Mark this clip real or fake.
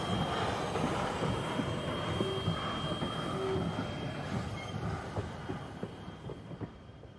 real